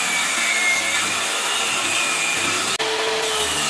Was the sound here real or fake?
real